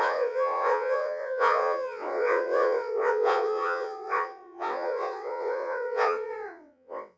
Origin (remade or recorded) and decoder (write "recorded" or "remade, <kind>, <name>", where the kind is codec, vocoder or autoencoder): remade, vocoder, WaveNeXt